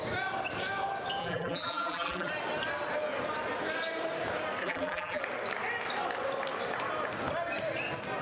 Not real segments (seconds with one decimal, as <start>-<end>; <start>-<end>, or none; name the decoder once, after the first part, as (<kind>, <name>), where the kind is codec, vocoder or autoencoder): 1.2-2.3 (vocoder, BigVGAN v2); 4.6-5.2